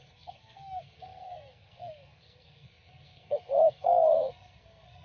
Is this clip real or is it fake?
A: fake